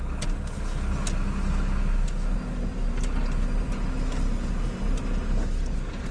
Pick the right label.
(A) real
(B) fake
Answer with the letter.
A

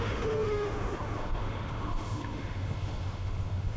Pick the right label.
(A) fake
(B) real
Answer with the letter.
A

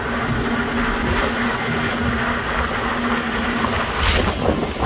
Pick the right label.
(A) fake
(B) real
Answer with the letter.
B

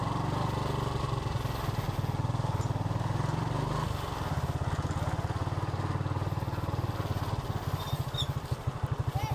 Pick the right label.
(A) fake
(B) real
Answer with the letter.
B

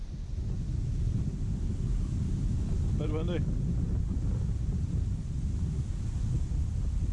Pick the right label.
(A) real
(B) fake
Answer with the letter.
A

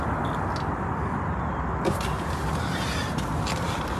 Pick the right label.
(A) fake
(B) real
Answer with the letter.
B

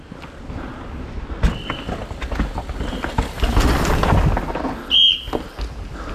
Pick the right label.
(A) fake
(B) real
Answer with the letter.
B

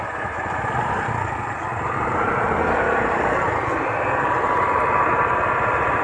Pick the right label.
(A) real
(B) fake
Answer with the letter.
A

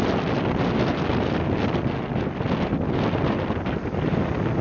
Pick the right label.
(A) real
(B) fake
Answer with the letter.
A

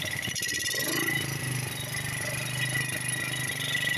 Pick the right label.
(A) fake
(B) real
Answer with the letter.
B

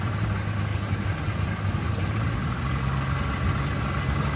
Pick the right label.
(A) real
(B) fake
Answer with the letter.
A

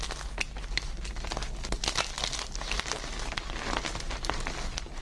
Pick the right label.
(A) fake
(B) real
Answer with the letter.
B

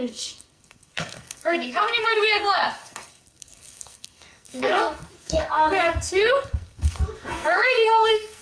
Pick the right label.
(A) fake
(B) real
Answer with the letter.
A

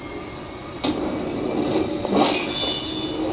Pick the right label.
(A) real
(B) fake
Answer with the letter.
A